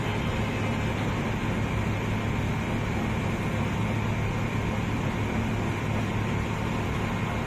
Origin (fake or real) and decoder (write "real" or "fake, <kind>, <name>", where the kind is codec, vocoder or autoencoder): real